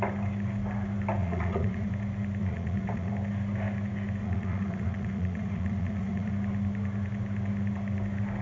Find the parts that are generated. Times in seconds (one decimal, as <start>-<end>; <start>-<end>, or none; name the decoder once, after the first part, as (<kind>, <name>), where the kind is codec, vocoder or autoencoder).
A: 1.2-1.9 (vocoder, Vocos); 2.4-3.1; 4.2-6.3